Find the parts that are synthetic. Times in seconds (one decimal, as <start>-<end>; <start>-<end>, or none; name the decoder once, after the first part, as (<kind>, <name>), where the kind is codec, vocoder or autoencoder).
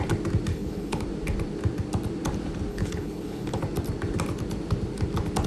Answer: 0.5-1.0 (codec, HILCodec); 2.7-3.6